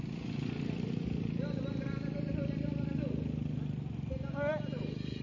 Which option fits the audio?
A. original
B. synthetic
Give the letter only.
A